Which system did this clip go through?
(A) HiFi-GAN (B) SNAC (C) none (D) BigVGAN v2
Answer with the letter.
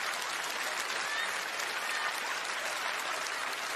C